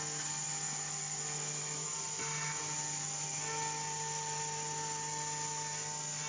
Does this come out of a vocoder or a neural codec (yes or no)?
no